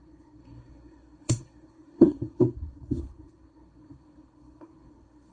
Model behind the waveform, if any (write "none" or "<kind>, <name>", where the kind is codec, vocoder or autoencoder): codec, SNAC